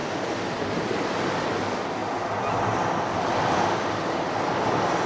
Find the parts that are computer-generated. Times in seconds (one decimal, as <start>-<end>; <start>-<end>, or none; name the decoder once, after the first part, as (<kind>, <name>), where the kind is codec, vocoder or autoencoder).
none